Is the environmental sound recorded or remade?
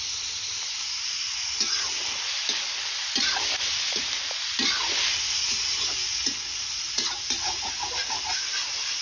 recorded